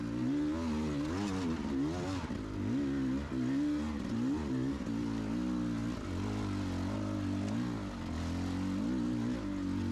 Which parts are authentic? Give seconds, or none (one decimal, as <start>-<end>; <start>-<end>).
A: 0.0-9.9